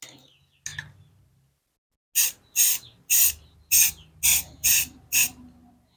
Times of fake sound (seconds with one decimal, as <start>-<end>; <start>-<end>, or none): none